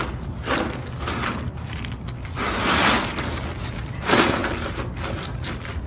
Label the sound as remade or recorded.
recorded